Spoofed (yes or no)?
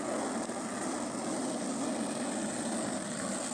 no